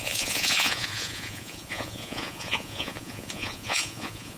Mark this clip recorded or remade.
remade